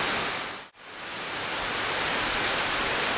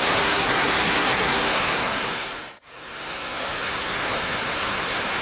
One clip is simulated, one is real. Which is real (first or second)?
first